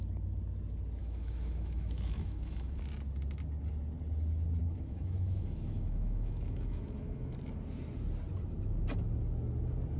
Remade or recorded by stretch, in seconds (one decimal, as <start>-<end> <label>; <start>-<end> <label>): 0.0-1.0 recorded; 1.0-2.8 remade; 2.8-4.6 recorded; 4.6-7.4 remade; 7.4-10.0 recorded